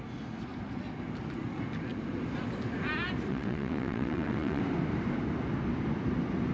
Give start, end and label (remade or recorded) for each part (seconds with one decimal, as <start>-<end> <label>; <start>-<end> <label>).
0.0-3.3 recorded; 3.3-4.6 remade; 4.6-6.5 recorded